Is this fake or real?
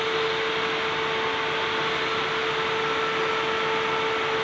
real